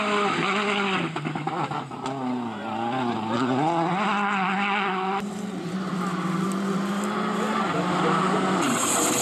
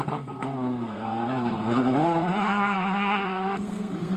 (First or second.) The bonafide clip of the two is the first